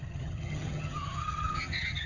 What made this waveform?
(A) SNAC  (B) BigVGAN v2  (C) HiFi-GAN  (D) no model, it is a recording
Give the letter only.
C